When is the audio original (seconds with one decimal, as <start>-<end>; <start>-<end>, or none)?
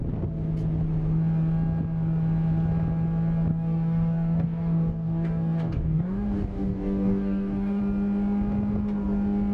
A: 0.0-3.5; 7.8-9.5